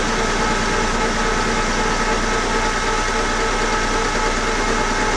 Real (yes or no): yes